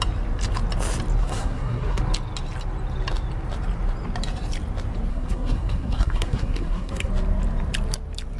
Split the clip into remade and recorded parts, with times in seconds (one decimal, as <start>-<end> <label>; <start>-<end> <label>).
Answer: 0.0-1.2 recorded; 1.2-2.0 remade; 2.0-5.1 recorded; 5.1-7.1 remade; 7.1-8.4 recorded